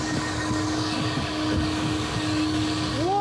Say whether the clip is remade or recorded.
remade